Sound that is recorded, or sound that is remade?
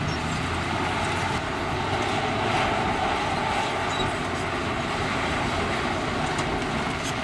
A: recorded